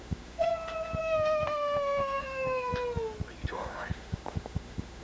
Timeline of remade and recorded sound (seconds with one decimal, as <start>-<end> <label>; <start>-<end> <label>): 0.0-0.5 remade; 0.5-1.0 recorded; 1.0-2.7 remade; 2.7-3.5 recorded; 3.5-5.0 remade

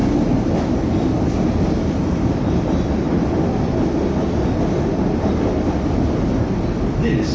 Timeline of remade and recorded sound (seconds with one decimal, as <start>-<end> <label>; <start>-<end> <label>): 0.0-7.3 recorded

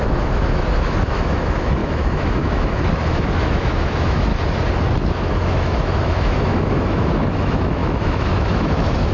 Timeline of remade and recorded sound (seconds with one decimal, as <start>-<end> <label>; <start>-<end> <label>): 0.0-4.3 remade; 4.3-5.0 recorded; 5.0-9.1 remade